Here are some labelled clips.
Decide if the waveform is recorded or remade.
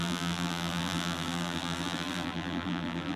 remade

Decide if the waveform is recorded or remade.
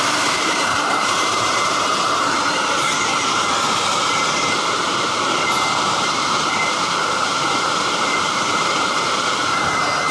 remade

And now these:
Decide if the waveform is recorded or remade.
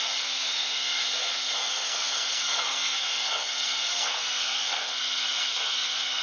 remade